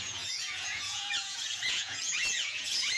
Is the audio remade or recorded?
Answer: remade